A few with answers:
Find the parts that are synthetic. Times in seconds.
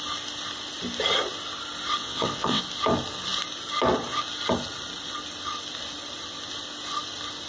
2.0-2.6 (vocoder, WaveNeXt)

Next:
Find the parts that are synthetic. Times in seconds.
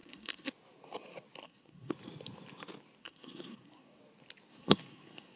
0.0-0.5 (codec, SNAC); 1.4-1.9; 3.0-4.0; 4.5-5.4